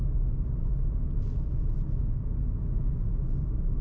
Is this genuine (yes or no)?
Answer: yes